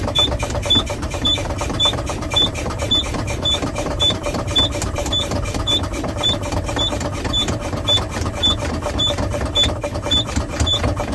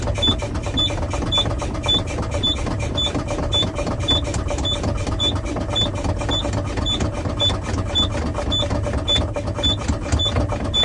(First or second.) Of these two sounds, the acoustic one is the second